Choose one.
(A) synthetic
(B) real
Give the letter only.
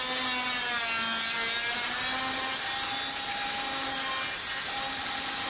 B